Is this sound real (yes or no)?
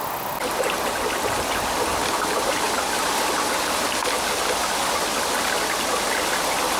yes